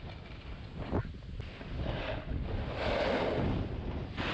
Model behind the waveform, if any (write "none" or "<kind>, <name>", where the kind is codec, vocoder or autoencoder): none